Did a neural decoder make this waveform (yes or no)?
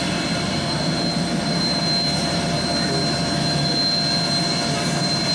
no